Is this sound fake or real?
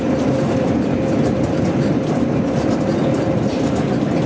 real